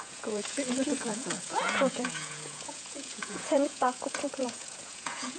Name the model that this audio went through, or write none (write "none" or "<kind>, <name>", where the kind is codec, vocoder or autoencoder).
vocoder, Vocos